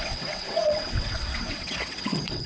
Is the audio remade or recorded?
remade